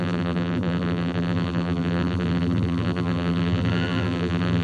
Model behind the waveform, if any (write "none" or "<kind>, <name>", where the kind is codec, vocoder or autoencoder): vocoder, BigVGAN v2